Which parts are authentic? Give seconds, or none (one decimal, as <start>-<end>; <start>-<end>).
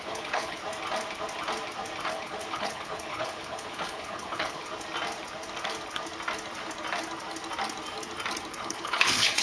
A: 0.6-2.1; 4.6-8.6